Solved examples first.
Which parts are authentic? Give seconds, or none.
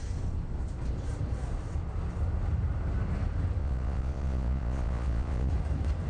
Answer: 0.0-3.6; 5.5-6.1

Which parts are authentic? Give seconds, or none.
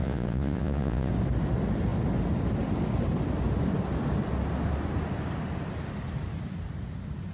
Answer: 1.1-7.3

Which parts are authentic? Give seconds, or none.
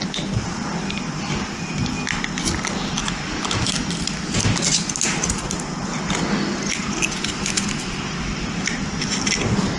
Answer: 0.0-9.8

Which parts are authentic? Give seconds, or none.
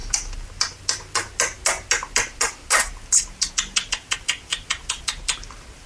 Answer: 0.0-5.9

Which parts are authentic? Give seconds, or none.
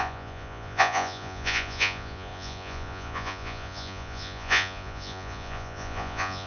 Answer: none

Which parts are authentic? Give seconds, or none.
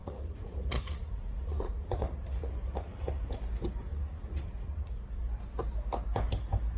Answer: 3.2-3.9; 5.0-6.8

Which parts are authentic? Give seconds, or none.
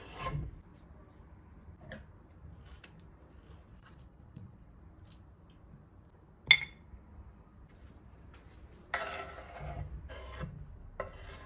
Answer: 0.0-3.7; 4.8-11.5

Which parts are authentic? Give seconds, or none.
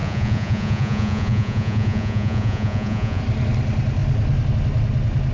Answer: 3.2-5.3